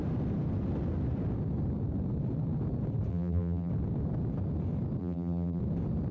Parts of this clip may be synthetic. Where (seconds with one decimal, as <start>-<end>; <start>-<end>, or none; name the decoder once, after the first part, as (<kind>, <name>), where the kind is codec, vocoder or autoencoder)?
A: 3.1-3.7 (vocoder, BigVGAN v2); 5.0-5.6